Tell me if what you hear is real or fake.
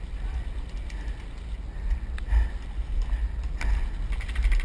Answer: real